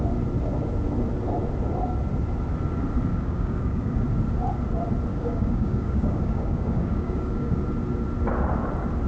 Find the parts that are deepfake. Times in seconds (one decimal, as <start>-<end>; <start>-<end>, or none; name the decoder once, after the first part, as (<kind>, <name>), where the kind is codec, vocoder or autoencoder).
3.1-4.0 (codec, DAC); 5.1-7.6